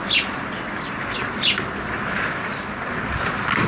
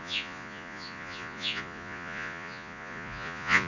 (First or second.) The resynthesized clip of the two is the second